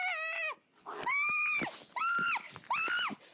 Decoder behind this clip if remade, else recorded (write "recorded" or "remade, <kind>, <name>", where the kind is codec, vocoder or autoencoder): recorded